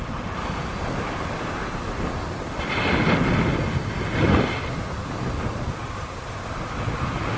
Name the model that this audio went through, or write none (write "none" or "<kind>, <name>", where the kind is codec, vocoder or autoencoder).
none